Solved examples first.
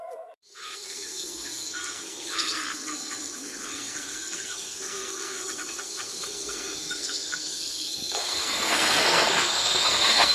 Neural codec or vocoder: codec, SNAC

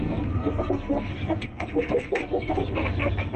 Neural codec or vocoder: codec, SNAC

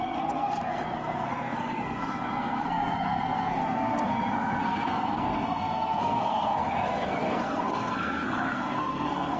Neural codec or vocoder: codec, SNAC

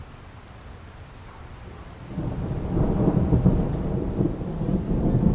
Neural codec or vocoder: none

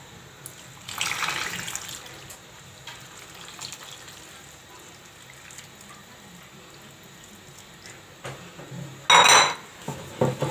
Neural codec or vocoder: none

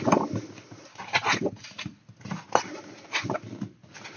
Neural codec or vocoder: none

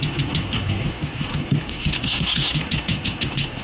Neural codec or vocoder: codec, SNAC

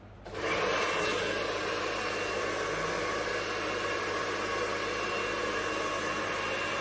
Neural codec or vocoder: none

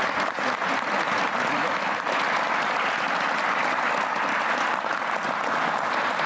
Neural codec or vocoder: none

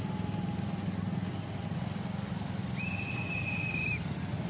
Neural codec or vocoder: none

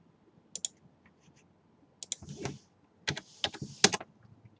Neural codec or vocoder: none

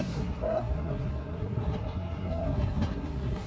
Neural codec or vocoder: codec, SNAC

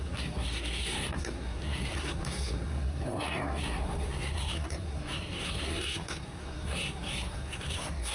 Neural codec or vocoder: codec, SNAC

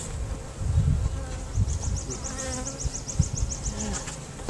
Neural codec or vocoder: none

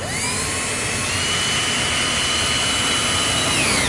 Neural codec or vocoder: none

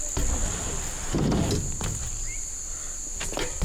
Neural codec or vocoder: none